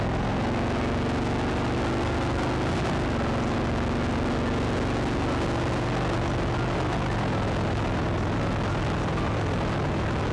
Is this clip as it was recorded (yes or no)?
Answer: yes